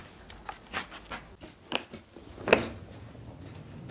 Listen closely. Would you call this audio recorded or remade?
recorded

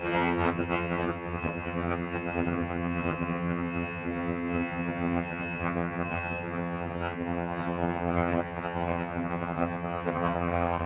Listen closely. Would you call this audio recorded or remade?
remade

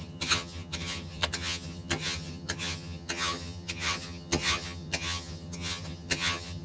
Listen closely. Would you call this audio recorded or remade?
remade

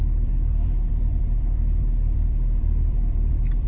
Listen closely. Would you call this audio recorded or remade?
remade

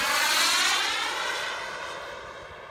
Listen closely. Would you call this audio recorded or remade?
recorded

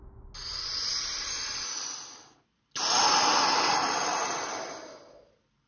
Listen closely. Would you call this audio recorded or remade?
recorded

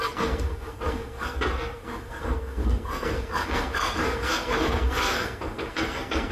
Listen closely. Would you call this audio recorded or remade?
remade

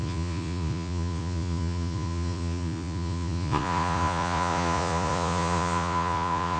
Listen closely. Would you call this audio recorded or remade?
remade